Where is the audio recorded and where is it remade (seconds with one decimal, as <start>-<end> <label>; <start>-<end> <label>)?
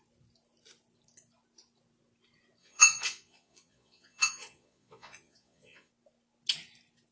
0.0-2.6 recorded; 2.6-5.9 remade; 5.9-7.1 recorded